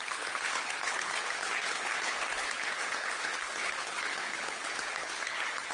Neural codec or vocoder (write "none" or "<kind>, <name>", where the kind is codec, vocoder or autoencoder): codec, HILCodec